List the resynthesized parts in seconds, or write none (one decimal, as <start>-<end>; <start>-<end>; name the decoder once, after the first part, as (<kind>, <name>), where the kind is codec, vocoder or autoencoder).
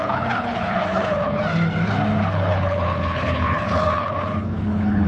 0.0-1.4 (codec, HILCodec); 2.2-5.1